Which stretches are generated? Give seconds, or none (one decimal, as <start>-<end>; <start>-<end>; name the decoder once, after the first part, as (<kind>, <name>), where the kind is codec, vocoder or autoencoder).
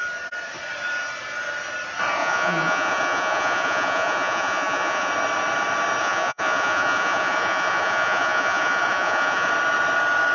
2.2-5.1 (vocoder, Vocos); 6.0-9.5